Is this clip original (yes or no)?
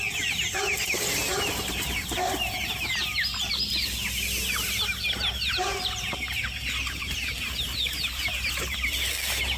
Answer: yes